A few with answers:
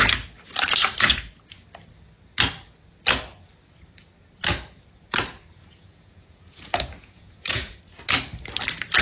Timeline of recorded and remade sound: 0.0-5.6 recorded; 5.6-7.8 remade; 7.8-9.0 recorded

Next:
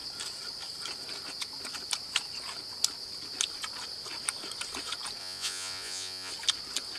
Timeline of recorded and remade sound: 0.0-5.2 recorded; 5.2-6.3 remade; 6.3-7.0 recorded